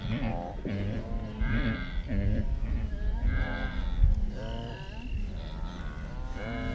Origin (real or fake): real